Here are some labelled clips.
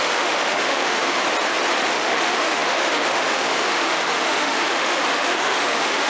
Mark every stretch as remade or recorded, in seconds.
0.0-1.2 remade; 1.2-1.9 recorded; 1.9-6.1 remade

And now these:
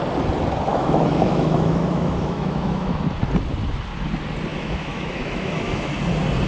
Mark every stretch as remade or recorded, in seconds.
0.0-0.7 recorded; 0.7-3.0 remade; 3.0-4.5 recorded; 4.5-5.9 remade; 5.9-6.5 recorded

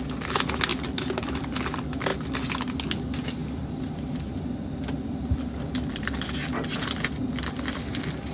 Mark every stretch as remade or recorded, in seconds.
0.0-8.3 recorded

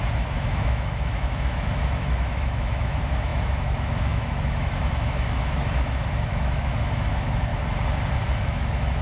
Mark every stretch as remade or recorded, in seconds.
0.0-7.5 remade; 7.5-8.4 recorded; 8.4-9.0 remade

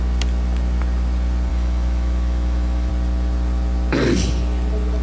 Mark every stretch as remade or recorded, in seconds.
0.0-1.5 recorded; 1.5-2.9 remade; 2.9-5.0 recorded